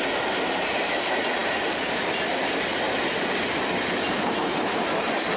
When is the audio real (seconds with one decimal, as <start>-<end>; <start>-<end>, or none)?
0.0-4.5